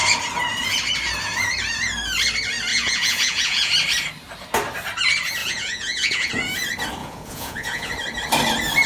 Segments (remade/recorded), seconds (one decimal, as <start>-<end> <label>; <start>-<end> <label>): 0.0-2.7 recorded; 2.7-3.7 remade; 3.7-5.4 recorded; 5.4-6.3 remade; 6.3-7.0 recorded; 7.0-7.9 remade; 7.9-8.9 recorded